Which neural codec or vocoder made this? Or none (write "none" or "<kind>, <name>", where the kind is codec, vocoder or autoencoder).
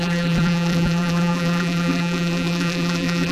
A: vocoder, BigVGAN v2